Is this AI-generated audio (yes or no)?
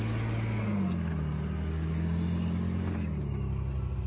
no